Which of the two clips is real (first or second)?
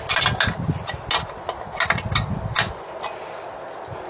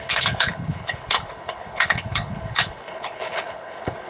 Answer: first